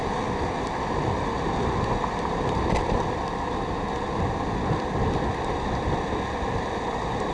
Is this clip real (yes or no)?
yes